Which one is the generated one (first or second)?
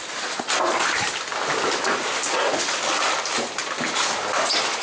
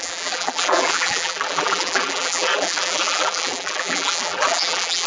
second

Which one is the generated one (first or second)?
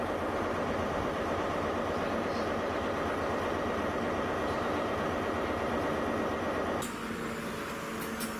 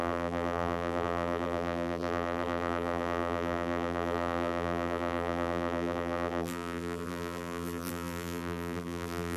second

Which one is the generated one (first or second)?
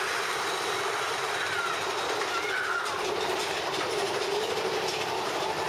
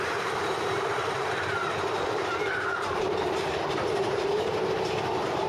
second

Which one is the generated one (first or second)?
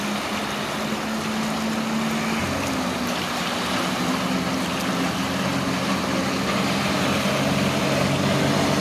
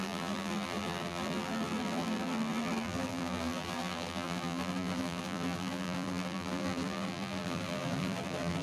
second